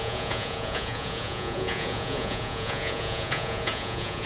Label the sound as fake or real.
fake